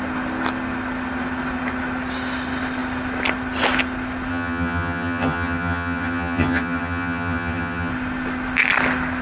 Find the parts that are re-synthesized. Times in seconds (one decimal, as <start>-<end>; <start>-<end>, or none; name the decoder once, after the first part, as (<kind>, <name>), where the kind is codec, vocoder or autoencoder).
4.3-7.9 (vocoder, HiFi-GAN)